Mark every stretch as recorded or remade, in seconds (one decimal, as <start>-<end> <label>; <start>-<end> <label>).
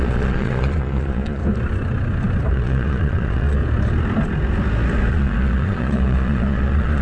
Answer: 0.0-1.4 remade; 1.4-2.5 recorded; 2.5-3.6 remade; 3.6-5.1 recorded; 5.1-7.0 remade